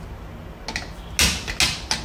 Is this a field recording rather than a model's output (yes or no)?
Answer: yes